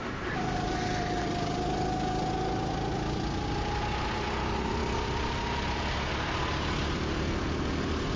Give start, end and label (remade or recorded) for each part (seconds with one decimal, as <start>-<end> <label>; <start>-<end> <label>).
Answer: 0.0-8.2 recorded